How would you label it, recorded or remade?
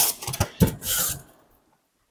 recorded